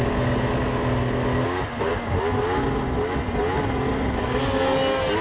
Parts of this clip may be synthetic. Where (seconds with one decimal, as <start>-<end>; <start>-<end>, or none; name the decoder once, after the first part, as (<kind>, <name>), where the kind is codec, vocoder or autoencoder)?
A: none